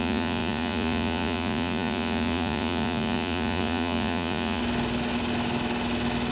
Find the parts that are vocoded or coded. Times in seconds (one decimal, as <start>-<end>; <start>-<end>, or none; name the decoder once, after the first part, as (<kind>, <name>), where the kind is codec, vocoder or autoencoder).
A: 0.0-4.6 (vocoder, Vocos)